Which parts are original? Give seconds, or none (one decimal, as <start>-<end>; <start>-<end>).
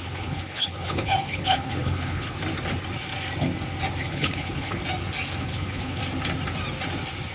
2.4-4.0; 4.8-5.4; 6.0-7.3